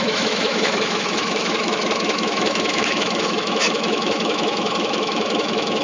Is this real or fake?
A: fake